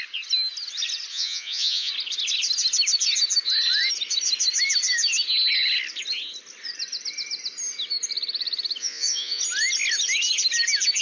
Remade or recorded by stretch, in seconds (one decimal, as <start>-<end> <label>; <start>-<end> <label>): 0.0-1.1 recorded; 1.1-1.9 remade; 1.9-8.8 recorded; 8.8-9.4 remade; 9.4-11.0 recorded